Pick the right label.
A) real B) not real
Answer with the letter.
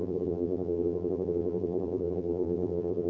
B